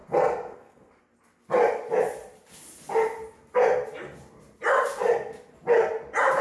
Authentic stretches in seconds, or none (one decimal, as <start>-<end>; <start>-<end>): 1.0-6.4